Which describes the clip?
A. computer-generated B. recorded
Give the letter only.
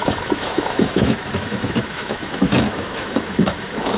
A